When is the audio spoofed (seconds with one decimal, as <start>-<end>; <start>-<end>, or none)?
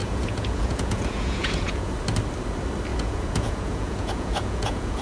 0.0-1.9; 2.9-5.0